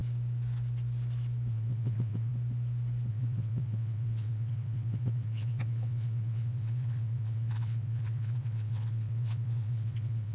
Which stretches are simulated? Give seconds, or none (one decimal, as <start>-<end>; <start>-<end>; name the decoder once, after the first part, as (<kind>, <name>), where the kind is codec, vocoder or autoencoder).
1.5-2.3 (vocoder, WaveNeXt); 3.1-10.3